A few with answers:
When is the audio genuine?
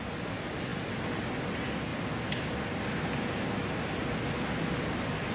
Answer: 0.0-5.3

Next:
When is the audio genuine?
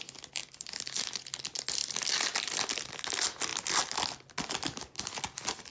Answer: 0.0-5.7